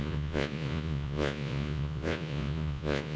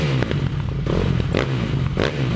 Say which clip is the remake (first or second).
first